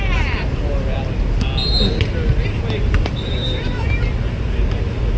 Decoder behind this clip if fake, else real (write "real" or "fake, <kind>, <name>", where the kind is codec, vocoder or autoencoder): real